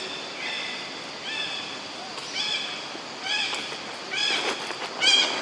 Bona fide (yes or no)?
yes